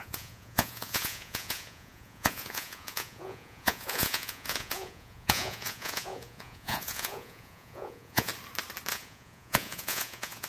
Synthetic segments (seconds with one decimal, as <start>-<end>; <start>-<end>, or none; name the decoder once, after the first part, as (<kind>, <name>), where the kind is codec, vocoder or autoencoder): 0.0-8.3 (vocoder, Vocos); 8.9-10.5